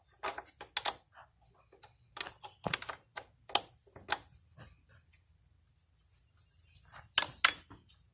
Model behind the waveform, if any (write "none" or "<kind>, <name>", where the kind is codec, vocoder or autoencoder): none